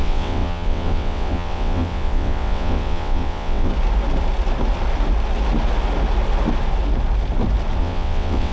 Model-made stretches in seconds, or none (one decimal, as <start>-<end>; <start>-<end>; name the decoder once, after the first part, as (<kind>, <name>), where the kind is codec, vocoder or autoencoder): 0.0-3.7 (vocoder, WaveNeXt); 7.8-8.5